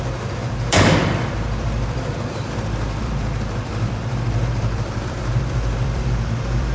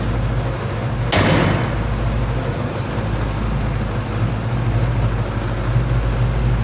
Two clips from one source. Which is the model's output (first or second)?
first